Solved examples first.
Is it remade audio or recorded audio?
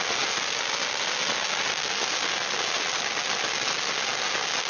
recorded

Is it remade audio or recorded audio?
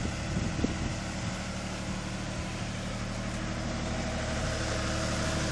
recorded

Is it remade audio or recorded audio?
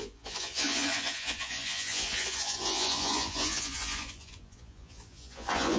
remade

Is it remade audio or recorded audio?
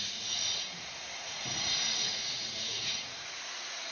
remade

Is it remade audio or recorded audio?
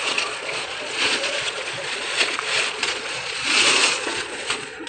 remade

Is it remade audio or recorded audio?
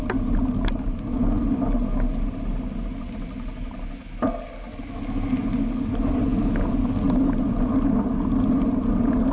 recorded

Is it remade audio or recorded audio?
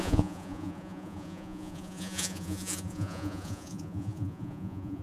remade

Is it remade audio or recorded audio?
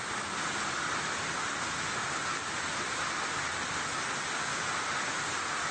recorded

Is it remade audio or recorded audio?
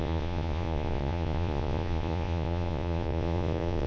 remade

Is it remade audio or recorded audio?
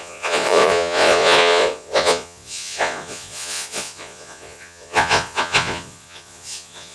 remade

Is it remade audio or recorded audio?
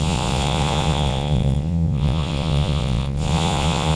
remade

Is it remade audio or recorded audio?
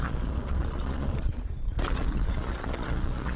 remade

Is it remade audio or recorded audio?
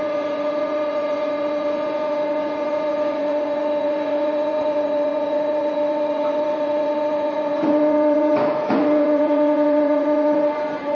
remade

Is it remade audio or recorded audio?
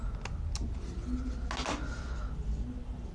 recorded